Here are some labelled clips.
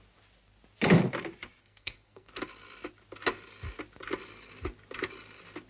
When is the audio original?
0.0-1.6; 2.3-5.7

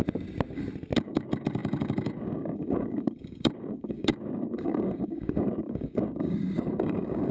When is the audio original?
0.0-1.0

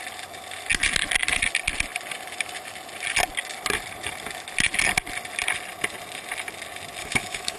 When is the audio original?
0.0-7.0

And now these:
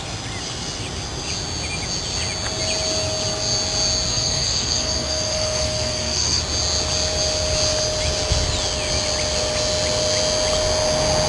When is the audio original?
0.0-4.1; 6.4-11.3

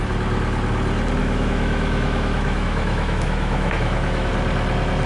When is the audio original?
0.0-1.2; 4.3-5.1